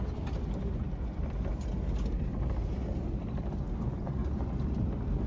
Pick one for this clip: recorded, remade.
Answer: recorded